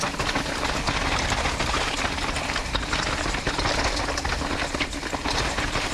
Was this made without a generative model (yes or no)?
yes